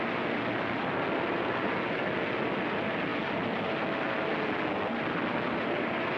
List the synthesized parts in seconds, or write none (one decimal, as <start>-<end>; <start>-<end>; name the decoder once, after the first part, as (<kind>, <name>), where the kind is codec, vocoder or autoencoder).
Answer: none